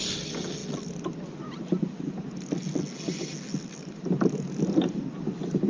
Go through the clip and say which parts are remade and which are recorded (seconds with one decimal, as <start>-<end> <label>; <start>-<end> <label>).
0.0-5.7 recorded